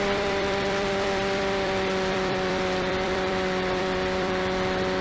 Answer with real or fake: fake